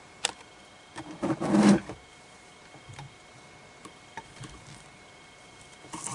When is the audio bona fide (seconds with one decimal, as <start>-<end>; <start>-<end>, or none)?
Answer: 0.0-1.8; 3.3-3.8